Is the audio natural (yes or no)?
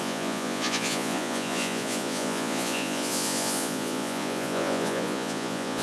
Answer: no